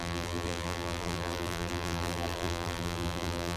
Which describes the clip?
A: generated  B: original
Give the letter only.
A